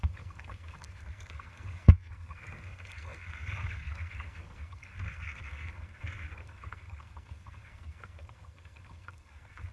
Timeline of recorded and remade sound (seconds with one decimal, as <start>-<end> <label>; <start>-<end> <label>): 0.0-9.7 remade

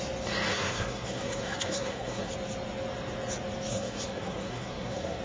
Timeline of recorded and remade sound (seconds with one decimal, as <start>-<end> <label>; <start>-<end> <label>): 0.0-0.5 recorded; 0.5-2.3 remade; 2.3-3.7 recorded; 3.7-5.2 remade